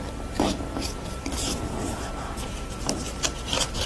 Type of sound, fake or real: fake